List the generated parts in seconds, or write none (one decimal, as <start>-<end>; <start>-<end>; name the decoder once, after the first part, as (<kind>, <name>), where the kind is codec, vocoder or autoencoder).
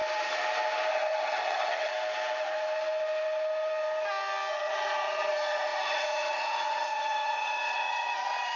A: 0.9-1.9 (vocoder, HiFi-GAN); 4.5-8.6